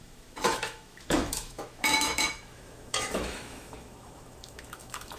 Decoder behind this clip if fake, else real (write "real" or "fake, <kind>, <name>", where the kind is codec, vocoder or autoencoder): fake, autoencoder, DAC-VAE